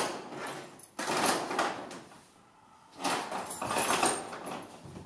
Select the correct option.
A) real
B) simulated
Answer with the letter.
A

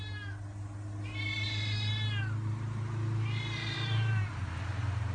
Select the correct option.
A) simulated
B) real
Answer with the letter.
B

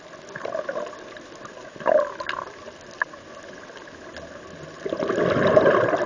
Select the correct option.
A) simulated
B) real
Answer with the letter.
B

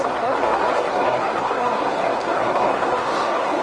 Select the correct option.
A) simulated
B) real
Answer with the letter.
A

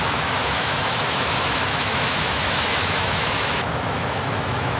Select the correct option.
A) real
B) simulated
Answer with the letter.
B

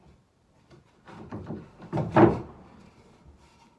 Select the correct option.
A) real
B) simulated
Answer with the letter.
A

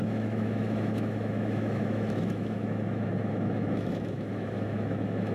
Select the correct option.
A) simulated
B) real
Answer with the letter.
A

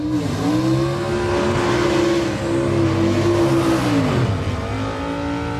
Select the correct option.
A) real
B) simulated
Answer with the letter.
A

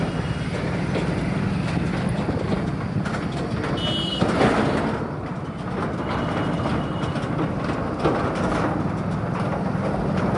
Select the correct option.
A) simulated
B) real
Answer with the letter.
B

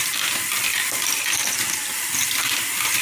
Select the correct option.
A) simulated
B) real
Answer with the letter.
B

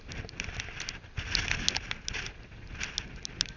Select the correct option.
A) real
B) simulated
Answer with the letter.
A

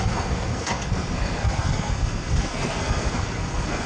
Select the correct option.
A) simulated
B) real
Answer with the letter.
A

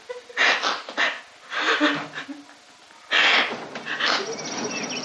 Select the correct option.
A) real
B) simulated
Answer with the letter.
A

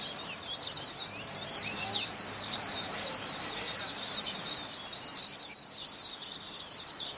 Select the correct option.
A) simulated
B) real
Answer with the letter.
A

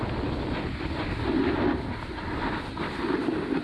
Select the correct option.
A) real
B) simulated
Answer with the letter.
A